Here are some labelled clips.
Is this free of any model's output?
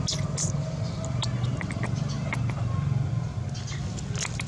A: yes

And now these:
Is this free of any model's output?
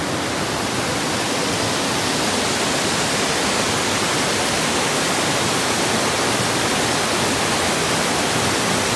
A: yes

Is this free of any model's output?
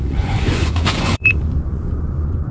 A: no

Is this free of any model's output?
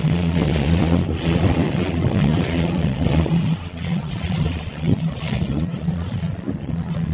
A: no